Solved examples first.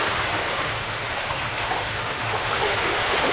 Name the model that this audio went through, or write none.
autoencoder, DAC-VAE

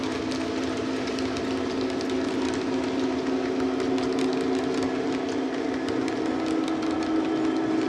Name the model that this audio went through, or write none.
none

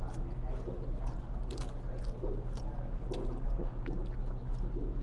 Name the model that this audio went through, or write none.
none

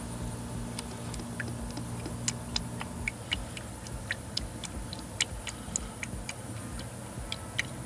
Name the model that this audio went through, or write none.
none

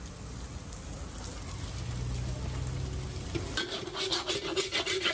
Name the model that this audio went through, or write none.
none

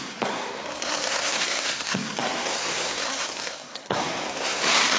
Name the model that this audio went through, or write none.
codec, SNAC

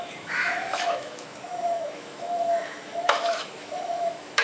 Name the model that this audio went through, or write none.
autoencoder, DAC-VAE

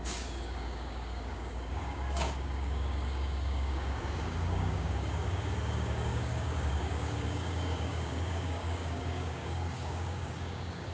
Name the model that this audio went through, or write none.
codec, DAC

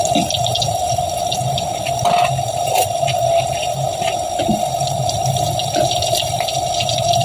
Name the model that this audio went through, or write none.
none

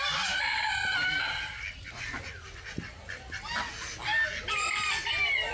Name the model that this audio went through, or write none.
none